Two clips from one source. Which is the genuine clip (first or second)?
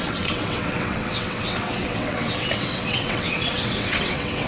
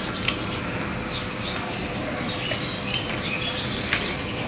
second